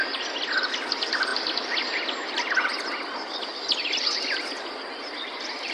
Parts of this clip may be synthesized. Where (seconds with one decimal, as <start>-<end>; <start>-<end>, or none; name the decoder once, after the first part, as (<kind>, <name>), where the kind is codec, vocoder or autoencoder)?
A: none